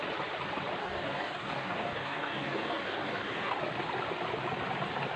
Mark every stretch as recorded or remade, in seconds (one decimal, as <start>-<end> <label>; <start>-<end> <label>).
0.0-0.8 recorded; 0.8-3.6 remade; 3.6-5.2 recorded